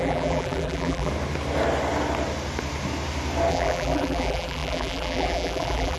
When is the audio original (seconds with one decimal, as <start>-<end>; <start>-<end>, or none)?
1.1-3.5